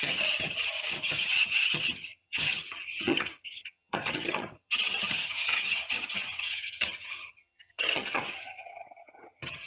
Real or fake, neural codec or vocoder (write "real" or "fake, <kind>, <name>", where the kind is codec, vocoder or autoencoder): fake, vocoder, HiFi-GAN